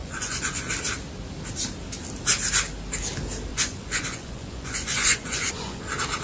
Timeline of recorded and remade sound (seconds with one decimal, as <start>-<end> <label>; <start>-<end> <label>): 0.0-0.7 remade; 0.7-3.5 recorded; 3.5-5.8 remade; 5.8-6.2 recorded